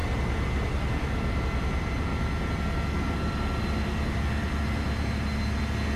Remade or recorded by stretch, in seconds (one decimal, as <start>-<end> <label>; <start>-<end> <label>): 0.0-2.1 remade; 2.1-6.0 recorded

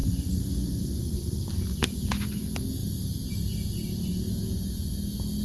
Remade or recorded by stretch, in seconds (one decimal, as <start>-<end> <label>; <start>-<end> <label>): 0.0-1.4 remade; 1.4-5.4 recorded

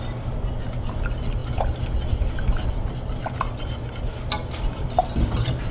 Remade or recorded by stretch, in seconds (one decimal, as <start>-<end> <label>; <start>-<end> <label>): 0.0-5.7 recorded

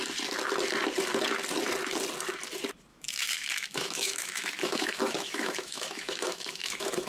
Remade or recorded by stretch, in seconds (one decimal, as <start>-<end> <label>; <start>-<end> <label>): 0.0-2.9 recorded; 2.9-7.1 remade